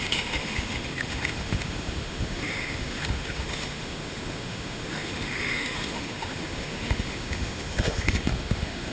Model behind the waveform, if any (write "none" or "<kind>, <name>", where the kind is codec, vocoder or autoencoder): autoencoder, DAC-VAE